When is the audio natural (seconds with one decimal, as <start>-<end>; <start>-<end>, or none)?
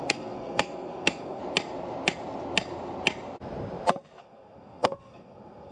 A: 1.4-4.2